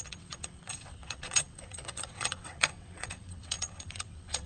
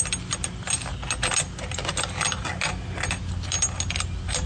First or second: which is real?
second